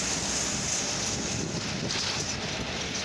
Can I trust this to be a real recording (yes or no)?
yes